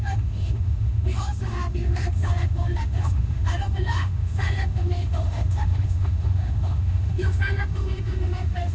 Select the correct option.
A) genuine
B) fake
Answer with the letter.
B